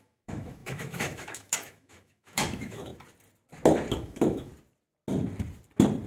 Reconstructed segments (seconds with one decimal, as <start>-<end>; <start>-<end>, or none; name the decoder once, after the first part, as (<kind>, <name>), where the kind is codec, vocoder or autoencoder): 0.0-2.9 (autoencoder, DAC-VAE); 3.9-4.5